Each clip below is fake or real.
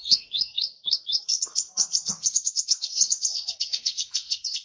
fake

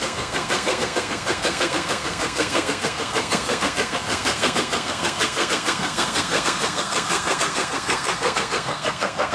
fake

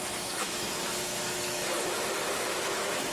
fake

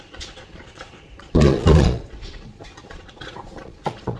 fake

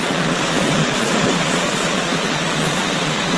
fake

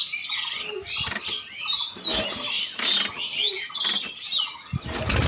real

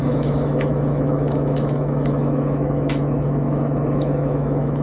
fake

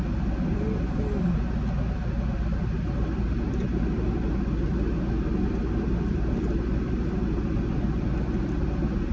real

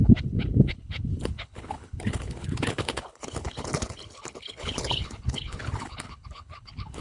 fake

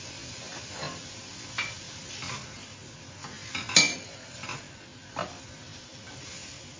real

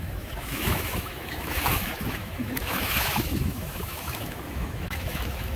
fake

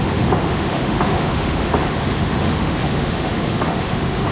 fake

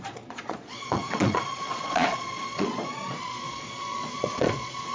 fake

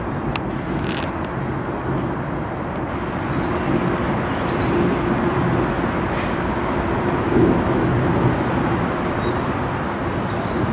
real